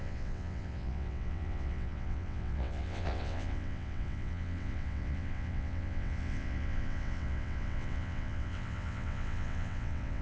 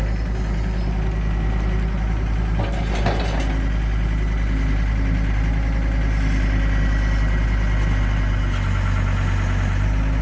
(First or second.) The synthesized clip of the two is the first